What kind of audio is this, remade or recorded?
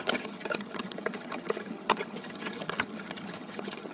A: remade